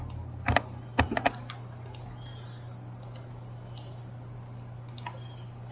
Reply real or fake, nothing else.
real